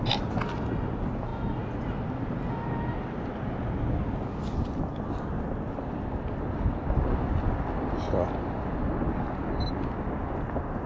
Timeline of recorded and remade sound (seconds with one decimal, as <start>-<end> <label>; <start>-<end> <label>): 0.0-10.9 recorded